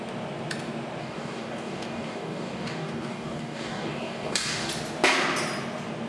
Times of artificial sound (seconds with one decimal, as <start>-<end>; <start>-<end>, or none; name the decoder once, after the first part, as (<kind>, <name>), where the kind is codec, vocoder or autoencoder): 1.0-4.7 (codec, DAC)